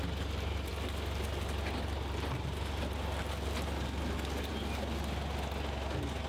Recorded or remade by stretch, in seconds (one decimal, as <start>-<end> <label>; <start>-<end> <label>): 0.0-6.3 recorded